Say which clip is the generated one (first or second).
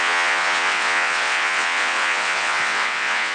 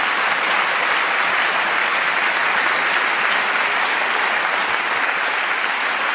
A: first